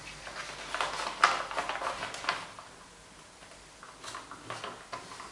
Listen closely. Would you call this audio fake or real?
real